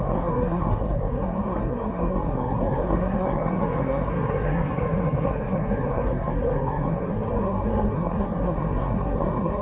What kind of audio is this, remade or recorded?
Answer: remade